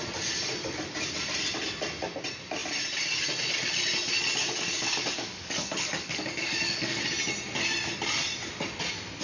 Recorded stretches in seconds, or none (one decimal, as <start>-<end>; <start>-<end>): 0.0-4.4; 7.0-9.2